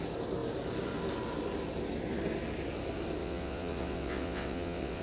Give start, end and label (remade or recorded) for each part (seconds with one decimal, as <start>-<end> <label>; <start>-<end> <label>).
0.0-3.2 recorded; 3.2-5.0 remade